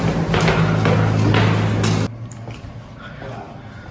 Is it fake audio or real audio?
real